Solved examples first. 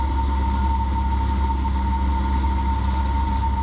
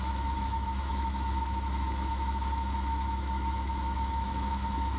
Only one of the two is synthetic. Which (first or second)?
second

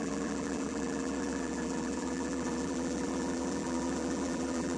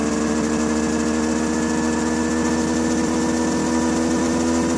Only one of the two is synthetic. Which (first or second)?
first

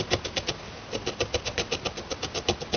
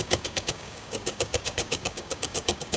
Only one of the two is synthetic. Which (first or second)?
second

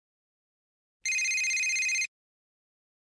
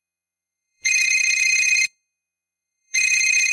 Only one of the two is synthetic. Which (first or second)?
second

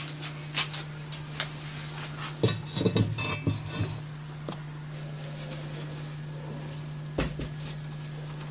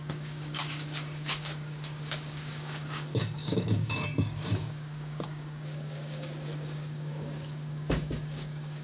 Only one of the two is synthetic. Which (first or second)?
second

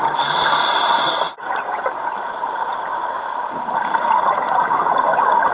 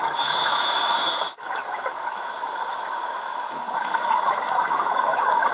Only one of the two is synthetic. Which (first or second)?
second